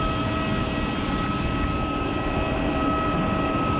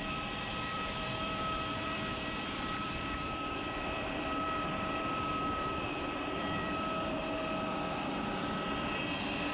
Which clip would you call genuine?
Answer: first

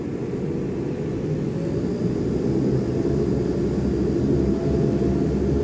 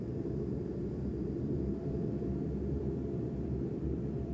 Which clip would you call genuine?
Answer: first